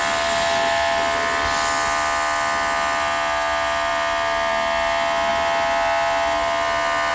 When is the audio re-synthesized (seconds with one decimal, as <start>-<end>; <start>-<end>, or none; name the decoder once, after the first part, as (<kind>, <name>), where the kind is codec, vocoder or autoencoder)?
none